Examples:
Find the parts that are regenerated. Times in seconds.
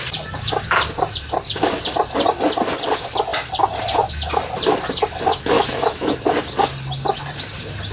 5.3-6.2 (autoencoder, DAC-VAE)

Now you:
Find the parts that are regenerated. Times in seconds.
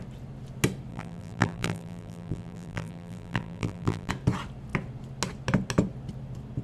0.9-4.1 (vocoder, BigVGAN v2)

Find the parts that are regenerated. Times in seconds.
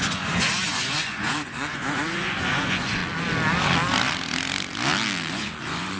0.0-3.0 (vocoder, Vocos); 5.3-6.0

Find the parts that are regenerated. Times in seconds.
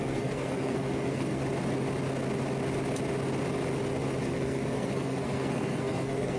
0.0-1.4 (codec, SNAC); 4.2-6.4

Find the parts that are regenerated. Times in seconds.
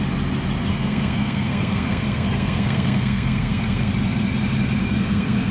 0.7-3.9 (codec, SNAC); 4.8-5.5